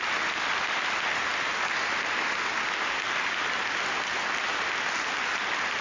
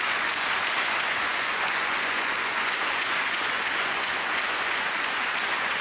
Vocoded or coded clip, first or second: second